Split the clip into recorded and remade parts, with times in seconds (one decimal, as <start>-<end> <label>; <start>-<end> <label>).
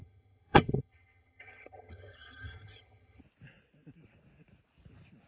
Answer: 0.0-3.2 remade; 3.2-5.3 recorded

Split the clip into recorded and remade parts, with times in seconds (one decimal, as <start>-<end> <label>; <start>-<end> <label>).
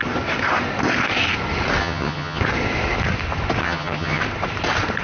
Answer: 0.0-1.8 recorded; 1.8-2.4 remade; 2.4-3.6 recorded; 3.6-4.2 remade; 4.2-5.0 recorded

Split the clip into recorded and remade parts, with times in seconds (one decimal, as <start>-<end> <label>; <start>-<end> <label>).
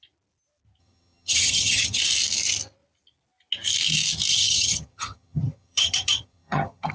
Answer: 0.0-0.8 recorded; 0.8-2.0 remade; 2.0-4.3 recorded; 4.3-6.9 remade